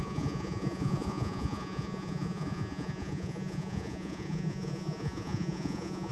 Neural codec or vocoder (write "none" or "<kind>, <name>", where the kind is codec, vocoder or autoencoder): vocoder, Vocos